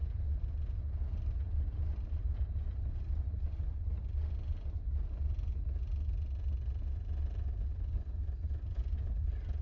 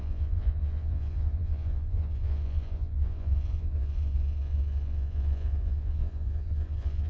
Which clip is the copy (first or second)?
second